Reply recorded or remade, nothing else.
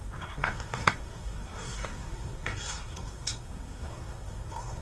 remade